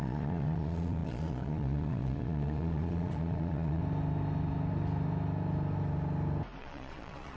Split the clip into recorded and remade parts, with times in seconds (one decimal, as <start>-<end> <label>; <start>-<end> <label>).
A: 0.0-3.8 remade; 3.8-6.6 recorded; 6.6-7.4 remade